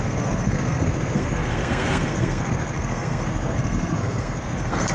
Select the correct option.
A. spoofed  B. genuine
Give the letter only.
A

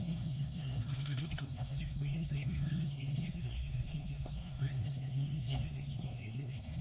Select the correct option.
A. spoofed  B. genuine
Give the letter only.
A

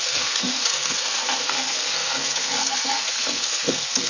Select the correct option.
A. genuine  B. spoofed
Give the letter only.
B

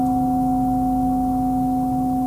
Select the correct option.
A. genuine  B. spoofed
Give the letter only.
A